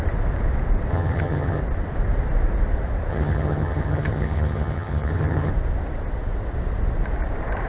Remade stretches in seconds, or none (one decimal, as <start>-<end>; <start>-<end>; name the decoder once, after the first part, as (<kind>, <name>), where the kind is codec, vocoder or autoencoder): 0.9-1.6 (vocoder, HiFi-GAN); 3.1-5.5